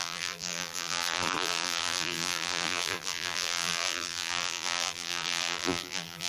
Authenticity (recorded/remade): remade